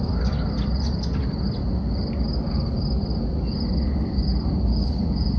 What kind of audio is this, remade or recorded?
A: recorded